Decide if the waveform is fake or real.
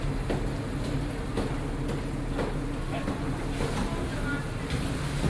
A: real